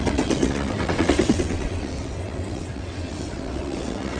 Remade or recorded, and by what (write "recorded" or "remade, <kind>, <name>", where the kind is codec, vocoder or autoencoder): remade, vocoder, WaveNeXt